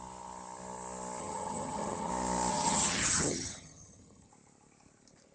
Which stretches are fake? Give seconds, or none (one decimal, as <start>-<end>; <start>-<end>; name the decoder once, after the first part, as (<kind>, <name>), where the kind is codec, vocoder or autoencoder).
1.2-2.1 (vocoder, HiFi-GAN); 2.5-4.3